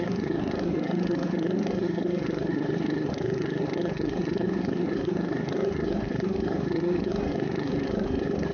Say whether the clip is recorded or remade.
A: remade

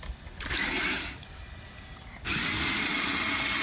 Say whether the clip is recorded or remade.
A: recorded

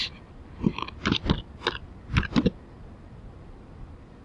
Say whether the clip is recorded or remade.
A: recorded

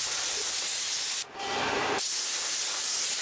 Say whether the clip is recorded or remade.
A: recorded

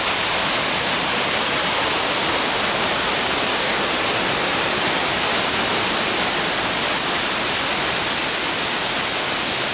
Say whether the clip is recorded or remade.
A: recorded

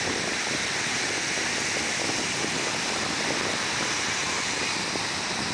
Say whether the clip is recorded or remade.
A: recorded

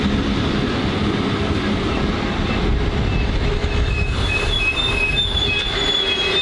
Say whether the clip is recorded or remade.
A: recorded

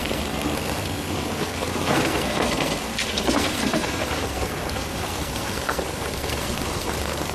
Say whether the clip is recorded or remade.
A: remade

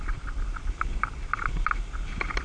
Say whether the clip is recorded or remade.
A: recorded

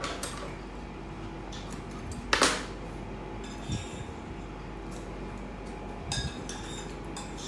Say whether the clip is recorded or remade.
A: recorded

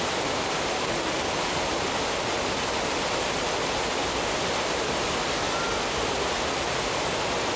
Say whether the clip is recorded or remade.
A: recorded